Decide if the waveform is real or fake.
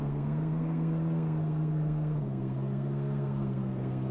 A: fake